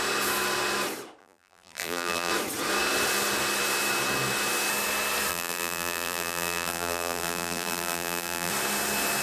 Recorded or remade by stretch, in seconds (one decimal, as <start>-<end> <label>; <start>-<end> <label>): 0.0-1.2 recorded; 1.2-2.3 remade; 2.3-5.3 recorded; 5.3-8.5 remade; 8.5-9.2 recorded